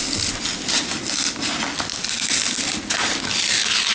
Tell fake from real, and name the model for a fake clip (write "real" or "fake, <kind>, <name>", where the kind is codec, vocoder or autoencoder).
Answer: real